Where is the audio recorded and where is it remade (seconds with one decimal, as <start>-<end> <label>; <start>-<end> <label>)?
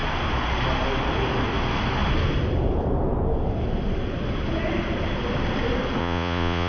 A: 0.0-6.0 recorded; 6.0-6.7 remade